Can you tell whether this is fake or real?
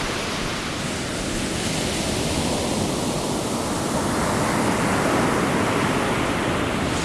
real